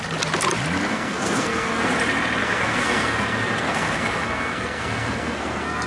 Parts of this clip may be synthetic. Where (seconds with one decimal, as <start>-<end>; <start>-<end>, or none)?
0.9-1.9; 2.4-5.9

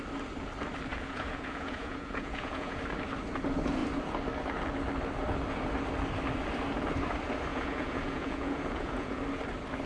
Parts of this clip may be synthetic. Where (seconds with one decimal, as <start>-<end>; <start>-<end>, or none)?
0.9-2.8; 7.5-9.2

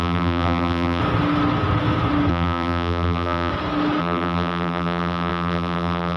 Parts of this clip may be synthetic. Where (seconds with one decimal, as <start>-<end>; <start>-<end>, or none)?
0.0-1.0; 2.3-3.5; 4.0-6.2

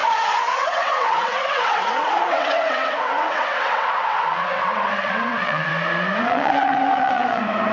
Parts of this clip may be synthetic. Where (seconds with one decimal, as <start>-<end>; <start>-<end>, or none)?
0.0-5.7; 6.2-7.7

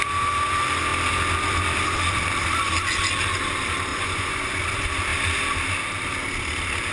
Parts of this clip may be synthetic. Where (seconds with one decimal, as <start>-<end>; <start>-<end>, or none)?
3.9-4.6

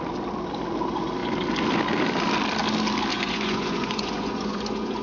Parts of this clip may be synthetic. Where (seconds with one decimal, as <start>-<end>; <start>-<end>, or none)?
3.1-5.0

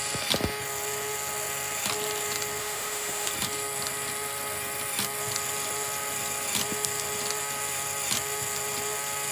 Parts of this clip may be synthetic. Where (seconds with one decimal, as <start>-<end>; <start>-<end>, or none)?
2.6-3.3